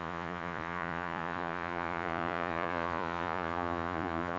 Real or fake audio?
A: fake